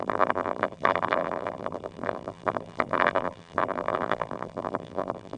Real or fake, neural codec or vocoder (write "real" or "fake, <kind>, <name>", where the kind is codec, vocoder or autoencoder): fake, vocoder, BigVGAN v2